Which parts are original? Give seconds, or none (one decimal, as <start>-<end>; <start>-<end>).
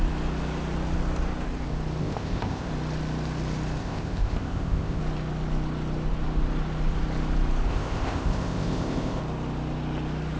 0.0-2.0; 2.7-3.8; 5.0-7.7; 9.2-10.4